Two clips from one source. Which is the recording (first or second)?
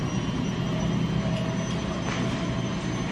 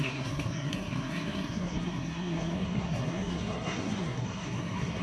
first